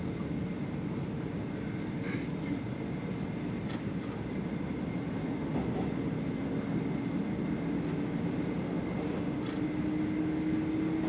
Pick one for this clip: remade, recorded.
recorded